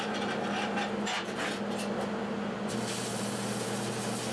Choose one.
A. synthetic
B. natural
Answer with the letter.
B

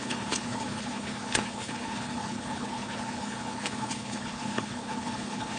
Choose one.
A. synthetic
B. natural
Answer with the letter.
A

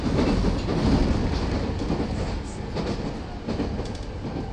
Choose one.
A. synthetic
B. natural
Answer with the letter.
B